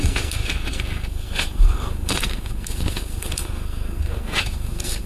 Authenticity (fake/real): fake